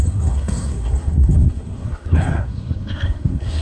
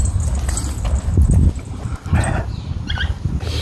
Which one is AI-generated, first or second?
first